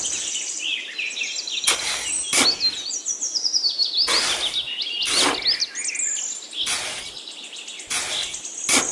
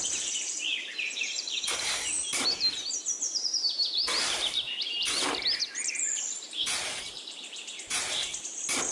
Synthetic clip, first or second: second